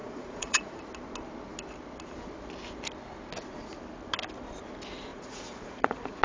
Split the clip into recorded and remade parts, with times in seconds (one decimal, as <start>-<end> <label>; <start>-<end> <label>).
0.0-0.8 remade; 0.8-5.1 recorded; 5.1-6.2 remade